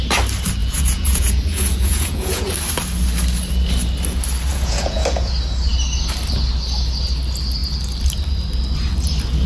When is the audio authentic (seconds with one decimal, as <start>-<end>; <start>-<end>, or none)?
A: 0.0-0.6; 2.5-4.5; 5.3-9.5